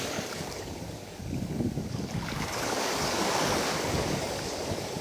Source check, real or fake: fake